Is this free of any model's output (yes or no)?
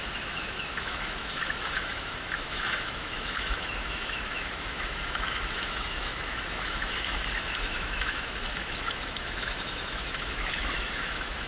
no